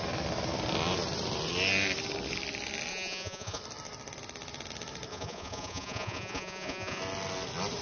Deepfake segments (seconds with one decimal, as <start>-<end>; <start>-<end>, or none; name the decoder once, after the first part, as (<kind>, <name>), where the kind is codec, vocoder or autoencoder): 2.9-3.6 (vocoder, Vocos); 5.1-7.0